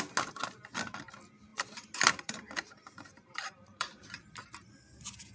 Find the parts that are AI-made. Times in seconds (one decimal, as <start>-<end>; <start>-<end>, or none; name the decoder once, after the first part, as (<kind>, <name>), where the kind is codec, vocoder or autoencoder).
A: 1.5-4.7 (vocoder, BigVGAN v2)